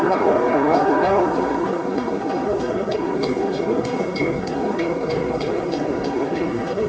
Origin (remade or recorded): remade